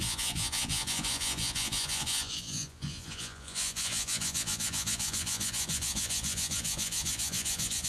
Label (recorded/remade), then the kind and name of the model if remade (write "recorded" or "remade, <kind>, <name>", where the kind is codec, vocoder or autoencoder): remade, vocoder, Vocos